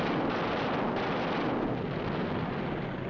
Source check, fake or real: real